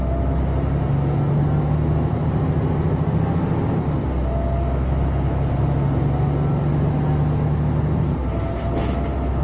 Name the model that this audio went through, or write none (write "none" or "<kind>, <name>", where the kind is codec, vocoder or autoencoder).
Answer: none